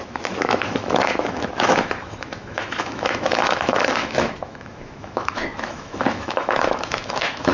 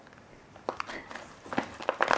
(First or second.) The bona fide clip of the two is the second